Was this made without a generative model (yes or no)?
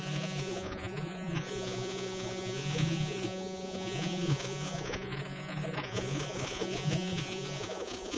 no